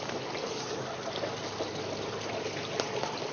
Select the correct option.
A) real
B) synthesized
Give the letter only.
A